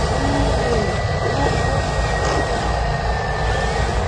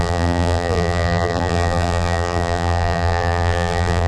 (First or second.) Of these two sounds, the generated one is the second